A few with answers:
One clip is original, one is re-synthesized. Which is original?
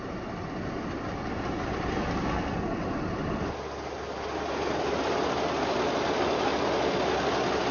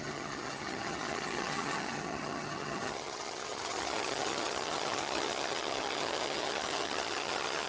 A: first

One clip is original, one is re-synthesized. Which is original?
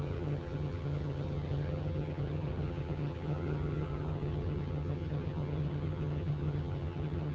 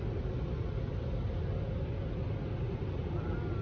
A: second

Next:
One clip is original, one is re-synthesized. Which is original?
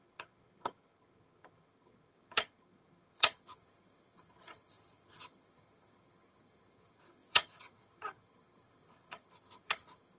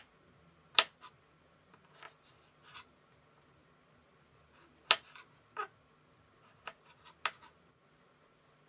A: second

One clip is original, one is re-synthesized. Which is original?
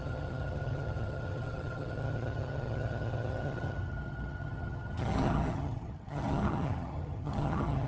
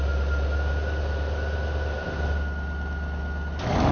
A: second